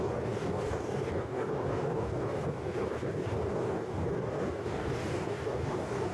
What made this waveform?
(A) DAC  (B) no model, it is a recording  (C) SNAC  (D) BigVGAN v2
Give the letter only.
A